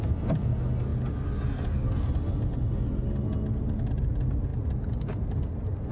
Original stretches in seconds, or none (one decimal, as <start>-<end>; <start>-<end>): 0.0-5.9